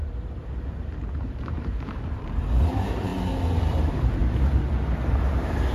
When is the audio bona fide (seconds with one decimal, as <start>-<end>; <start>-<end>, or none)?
0.4-1.0; 3.1-3.6; 4.2-5.1